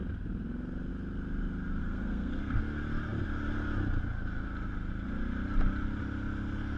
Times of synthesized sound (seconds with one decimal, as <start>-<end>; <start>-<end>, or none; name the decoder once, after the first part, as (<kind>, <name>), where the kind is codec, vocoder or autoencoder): 1.8-2.6 (codec, SNAC)